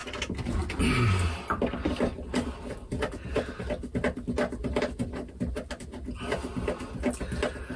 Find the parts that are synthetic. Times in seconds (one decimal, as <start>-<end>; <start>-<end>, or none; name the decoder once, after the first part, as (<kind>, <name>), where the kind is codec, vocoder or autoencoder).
none